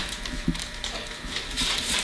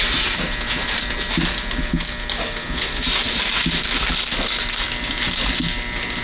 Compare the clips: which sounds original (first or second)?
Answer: second